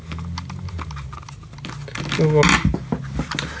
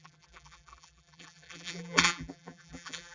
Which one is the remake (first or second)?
second